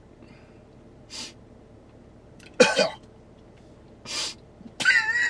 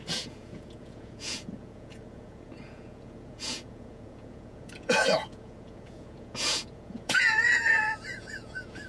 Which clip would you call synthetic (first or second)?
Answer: second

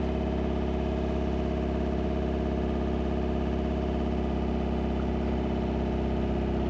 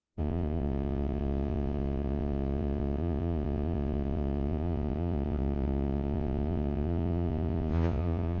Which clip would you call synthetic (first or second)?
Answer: second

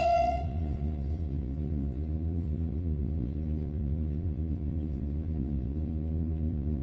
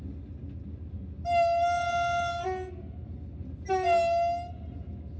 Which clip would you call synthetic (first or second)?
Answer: first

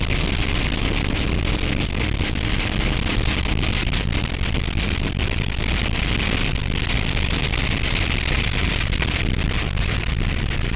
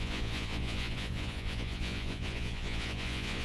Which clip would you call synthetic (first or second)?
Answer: second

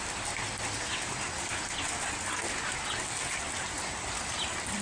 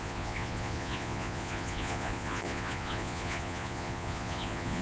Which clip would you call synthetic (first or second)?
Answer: second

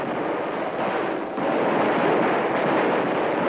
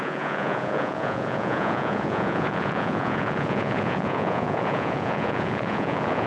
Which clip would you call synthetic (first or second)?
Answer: second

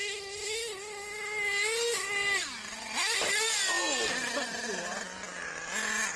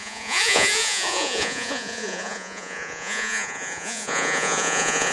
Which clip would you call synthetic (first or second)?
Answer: second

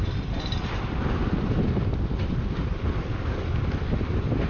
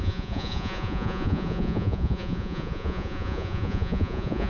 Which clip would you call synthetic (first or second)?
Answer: second